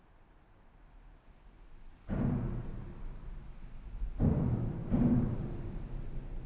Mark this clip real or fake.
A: real